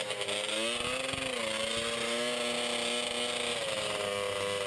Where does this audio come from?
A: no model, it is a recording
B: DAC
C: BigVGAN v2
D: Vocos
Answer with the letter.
A